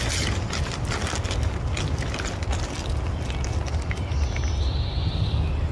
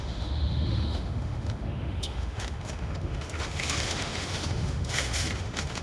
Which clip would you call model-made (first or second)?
second